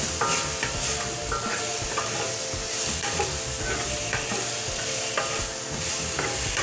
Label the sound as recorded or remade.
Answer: recorded